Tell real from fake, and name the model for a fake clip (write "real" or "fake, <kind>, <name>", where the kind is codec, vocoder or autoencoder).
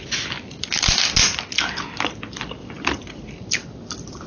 real